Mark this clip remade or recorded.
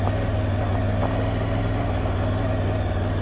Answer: recorded